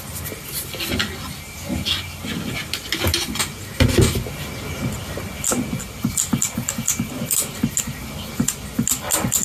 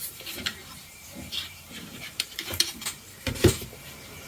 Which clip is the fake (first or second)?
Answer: second